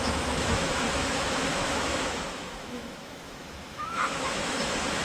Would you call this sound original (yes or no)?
no